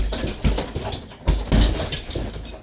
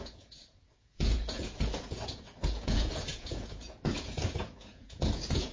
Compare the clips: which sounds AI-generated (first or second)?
second